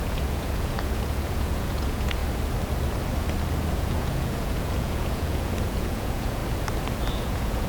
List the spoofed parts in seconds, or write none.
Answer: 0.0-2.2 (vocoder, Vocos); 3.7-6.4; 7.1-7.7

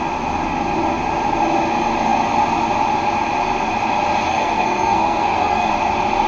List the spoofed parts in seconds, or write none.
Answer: 4.3-5.7 (codec, SNAC)

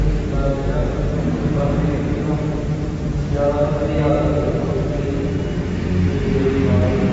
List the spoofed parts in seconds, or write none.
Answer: 0.8-4.9 (vocoder, BigVGAN v2)